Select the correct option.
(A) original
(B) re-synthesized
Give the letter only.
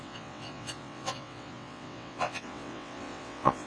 B